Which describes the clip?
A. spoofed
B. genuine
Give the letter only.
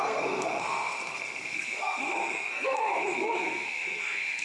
A